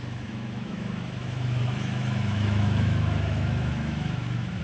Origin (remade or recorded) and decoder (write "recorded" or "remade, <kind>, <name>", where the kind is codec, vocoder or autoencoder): remade, autoencoder, DAC-VAE